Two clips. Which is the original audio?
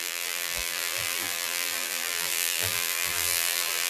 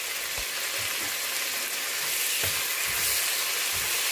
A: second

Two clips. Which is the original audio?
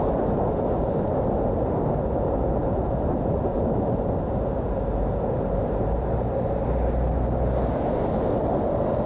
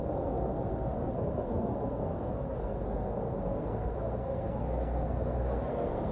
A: first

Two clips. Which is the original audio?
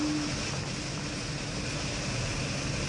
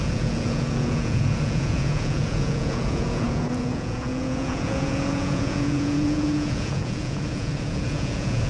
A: first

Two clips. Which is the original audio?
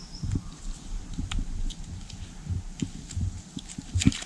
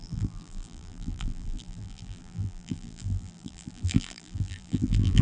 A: first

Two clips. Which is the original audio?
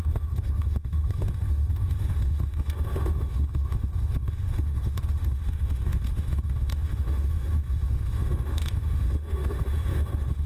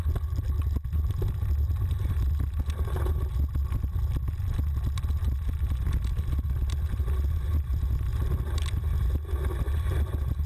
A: second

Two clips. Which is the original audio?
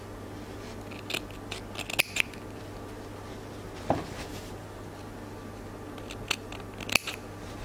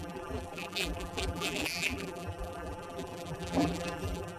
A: first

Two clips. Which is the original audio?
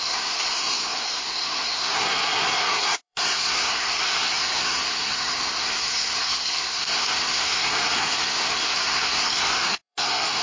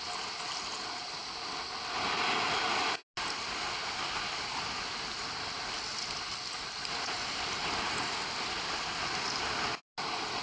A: second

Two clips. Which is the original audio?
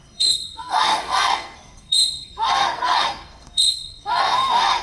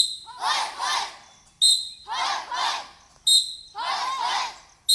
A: second